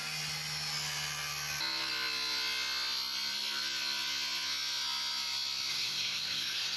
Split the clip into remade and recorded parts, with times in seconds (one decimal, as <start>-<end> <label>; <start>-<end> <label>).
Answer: 0.0-5.7 recorded; 5.7-6.8 remade